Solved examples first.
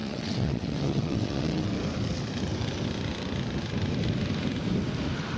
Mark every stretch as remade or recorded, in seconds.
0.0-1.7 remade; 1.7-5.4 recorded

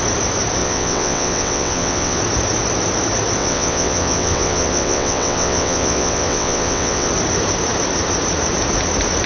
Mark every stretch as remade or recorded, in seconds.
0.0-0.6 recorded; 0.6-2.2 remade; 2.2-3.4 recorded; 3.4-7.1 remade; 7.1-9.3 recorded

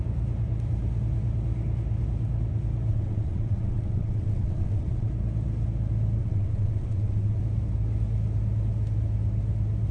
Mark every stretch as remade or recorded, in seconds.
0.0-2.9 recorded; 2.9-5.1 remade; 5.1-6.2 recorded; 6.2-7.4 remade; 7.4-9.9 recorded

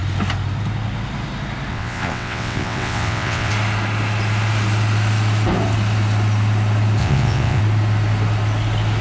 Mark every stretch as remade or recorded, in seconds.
0.0-1.7 recorded; 1.7-3.5 remade; 3.5-7.0 recorded; 7.0-7.6 remade; 7.6-9.0 recorded

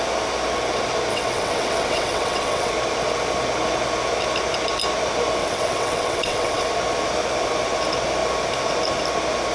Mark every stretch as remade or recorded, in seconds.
0.0-1.1 recorded; 1.1-2.7 remade; 2.7-5.4 recorded; 5.4-6.7 remade; 6.7-9.5 recorded

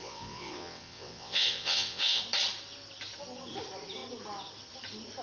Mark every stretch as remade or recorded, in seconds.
0.0-2.2 remade; 2.2-5.2 recorded

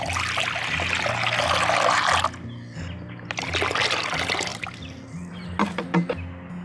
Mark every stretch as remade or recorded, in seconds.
0.0-6.6 recorded